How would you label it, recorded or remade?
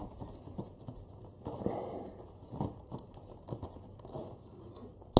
recorded